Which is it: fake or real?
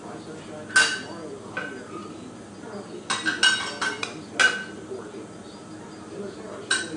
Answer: real